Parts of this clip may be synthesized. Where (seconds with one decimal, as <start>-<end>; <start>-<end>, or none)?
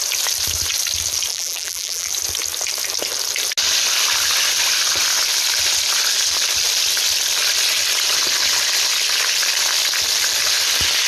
1.3-2.1